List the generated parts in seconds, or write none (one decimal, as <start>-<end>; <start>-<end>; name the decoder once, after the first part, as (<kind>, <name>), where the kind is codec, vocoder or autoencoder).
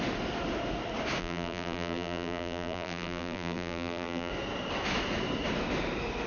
1.2-4.3 (vocoder, BigVGAN v2)